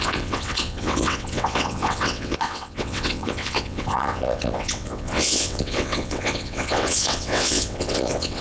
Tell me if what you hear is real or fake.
fake